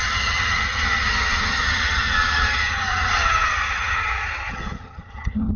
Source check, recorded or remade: remade